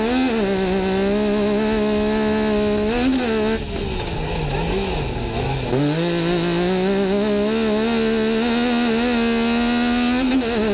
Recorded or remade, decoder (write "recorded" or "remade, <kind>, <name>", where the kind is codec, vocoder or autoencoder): recorded